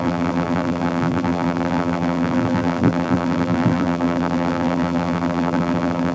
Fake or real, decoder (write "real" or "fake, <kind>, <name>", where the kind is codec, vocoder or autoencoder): fake, vocoder, BigVGAN v2